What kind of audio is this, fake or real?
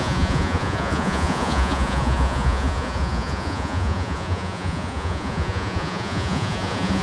fake